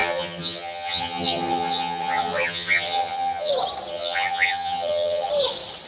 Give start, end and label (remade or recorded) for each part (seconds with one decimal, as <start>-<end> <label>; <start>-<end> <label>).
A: 0.0-3.5 remade; 3.5-3.9 recorded; 3.9-5.3 remade; 5.3-5.9 recorded